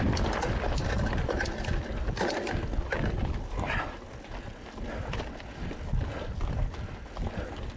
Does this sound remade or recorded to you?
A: recorded